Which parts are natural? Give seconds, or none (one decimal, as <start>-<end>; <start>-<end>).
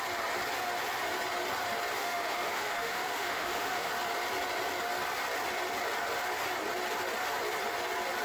0.0-2.0; 3.9-8.2